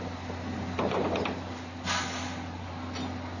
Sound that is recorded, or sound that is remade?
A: recorded